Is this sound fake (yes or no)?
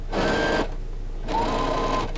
no